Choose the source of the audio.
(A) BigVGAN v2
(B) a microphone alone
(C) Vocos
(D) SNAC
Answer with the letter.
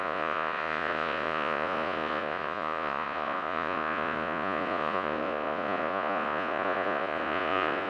C